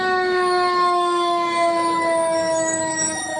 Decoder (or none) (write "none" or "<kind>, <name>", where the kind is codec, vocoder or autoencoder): autoencoder, DAC-VAE